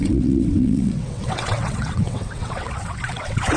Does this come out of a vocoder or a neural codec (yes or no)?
yes